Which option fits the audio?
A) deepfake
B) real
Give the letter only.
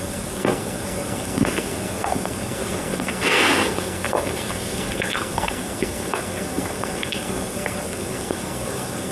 A